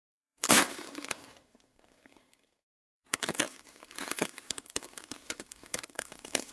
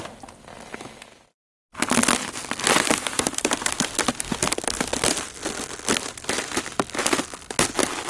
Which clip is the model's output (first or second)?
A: first